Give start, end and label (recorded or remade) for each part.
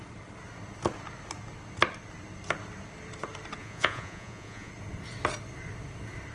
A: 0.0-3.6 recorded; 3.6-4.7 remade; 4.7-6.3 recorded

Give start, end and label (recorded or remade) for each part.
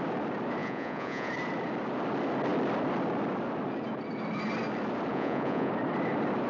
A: 0.0-0.6 recorded; 0.6-1.3 remade; 1.3-5.1 recorded; 5.1-5.7 remade; 5.7-6.5 recorded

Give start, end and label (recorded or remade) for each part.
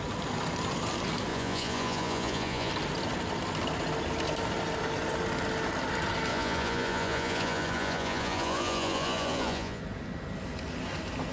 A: 0.0-1.3 recorded; 1.3-2.7 remade; 2.7-6.3 recorded; 6.3-9.8 remade; 9.8-11.3 recorded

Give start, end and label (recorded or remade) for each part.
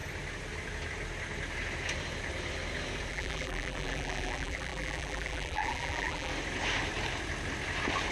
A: 0.0-3.1 recorded; 3.1-6.3 remade; 6.3-8.1 recorded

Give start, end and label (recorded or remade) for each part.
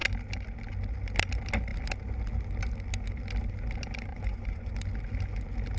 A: 0.0-4.1 recorded; 4.1-4.7 remade; 4.7-5.8 recorded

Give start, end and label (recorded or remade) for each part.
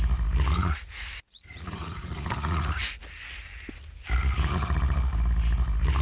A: 0.0-0.8 recorded; 0.8-3.0 remade; 3.0-6.0 recorded